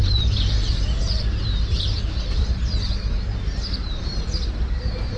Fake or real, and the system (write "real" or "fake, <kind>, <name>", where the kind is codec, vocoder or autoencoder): fake, vocoder, BigVGAN v2